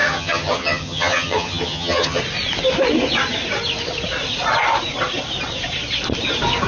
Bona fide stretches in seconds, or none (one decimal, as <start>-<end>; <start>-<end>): 2.2-6.7